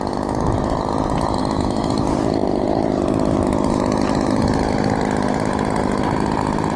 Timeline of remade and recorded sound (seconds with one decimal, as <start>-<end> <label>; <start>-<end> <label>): 0.0-1.4 recorded; 1.4-1.9 remade; 1.9-6.8 recorded